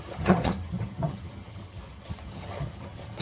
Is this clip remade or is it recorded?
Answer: remade